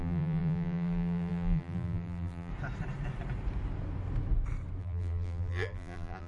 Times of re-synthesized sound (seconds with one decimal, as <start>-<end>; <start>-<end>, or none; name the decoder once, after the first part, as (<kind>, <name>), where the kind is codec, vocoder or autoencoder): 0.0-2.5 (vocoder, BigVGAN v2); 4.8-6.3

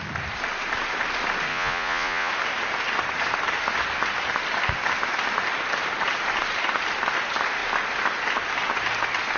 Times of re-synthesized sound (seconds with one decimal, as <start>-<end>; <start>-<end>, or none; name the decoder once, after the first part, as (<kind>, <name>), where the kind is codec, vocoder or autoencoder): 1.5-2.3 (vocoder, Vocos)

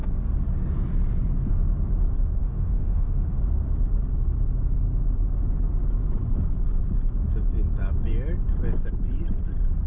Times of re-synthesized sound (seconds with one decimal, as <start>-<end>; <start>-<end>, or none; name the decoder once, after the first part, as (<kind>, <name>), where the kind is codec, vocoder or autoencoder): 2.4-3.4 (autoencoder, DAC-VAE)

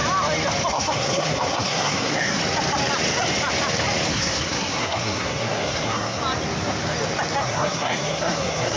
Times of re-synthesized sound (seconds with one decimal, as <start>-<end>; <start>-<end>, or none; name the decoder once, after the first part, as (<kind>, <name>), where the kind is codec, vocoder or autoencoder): 0.7-2.4 (codec, SNAC); 4.1-6.2; 7.4-8.8

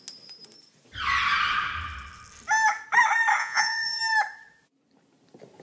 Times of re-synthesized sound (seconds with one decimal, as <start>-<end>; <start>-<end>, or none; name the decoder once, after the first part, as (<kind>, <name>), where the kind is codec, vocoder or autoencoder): 3.4-4.0 (vocoder, Vocos)

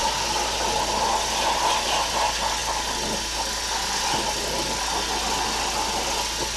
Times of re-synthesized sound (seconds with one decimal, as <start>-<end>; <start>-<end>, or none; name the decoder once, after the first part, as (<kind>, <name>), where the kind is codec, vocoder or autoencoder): none